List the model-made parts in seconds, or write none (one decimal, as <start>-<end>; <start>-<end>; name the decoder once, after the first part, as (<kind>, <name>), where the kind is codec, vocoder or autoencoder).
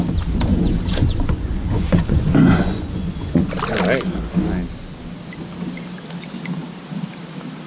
0.5-3.5 (vocoder, Vocos)